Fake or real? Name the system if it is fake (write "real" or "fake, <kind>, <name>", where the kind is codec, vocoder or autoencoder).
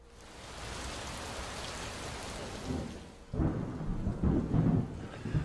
real